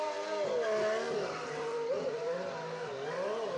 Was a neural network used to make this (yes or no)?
no